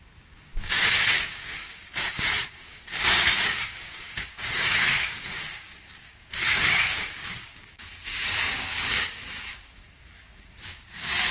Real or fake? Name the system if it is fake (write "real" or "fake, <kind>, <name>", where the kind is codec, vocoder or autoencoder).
fake, codec, DAC